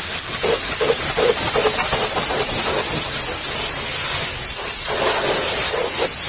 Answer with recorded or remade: recorded